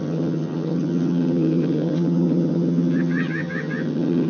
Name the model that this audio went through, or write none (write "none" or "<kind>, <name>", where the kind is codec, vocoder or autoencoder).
vocoder, HiFi-GAN